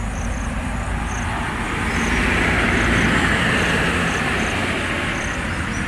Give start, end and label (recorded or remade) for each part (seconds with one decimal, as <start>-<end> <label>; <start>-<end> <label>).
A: 0.0-0.9 remade; 0.9-4.0 recorded; 4.0-4.6 remade; 4.6-5.3 recorded; 5.3-5.9 remade